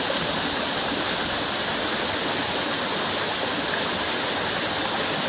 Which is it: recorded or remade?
recorded